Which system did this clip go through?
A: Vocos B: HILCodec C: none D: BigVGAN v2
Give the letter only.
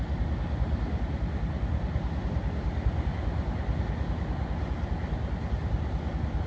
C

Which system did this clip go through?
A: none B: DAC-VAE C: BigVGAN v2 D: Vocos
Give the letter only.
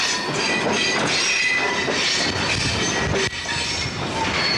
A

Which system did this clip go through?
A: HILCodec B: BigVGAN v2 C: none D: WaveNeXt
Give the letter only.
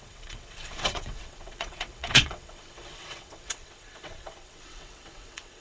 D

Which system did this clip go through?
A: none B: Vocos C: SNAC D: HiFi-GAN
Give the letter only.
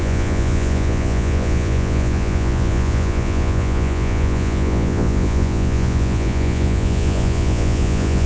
B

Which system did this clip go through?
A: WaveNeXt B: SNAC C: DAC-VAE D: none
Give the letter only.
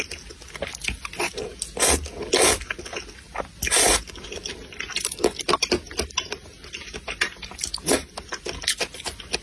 D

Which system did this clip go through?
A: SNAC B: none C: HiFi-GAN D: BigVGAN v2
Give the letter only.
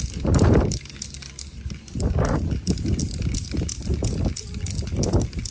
B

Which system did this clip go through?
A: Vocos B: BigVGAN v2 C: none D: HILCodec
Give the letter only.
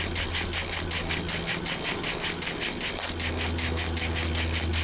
C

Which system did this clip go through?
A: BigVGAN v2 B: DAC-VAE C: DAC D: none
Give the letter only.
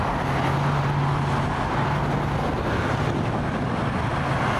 D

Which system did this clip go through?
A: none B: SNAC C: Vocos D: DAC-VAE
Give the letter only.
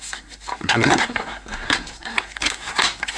B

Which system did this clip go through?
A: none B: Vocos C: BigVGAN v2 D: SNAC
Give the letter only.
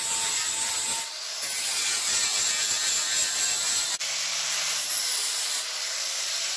C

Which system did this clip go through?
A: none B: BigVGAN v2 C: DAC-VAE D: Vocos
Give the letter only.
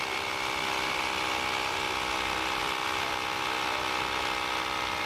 A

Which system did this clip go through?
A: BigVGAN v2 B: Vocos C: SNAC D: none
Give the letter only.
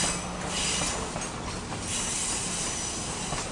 D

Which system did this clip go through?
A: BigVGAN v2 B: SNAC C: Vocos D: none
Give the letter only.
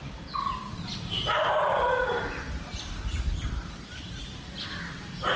D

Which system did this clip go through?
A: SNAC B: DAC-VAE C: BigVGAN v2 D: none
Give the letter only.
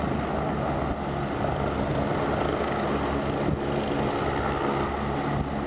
D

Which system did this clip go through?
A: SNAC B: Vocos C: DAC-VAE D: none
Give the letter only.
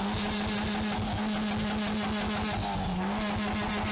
D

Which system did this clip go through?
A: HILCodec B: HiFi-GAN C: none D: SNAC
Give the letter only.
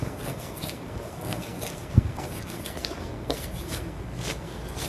D